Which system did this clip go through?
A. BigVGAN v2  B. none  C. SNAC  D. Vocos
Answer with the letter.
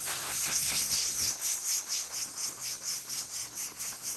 C